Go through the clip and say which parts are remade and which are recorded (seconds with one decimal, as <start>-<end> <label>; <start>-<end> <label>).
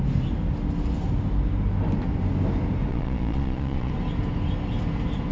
0.0-2.9 recorded; 2.9-3.9 remade; 3.9-5.3 recorded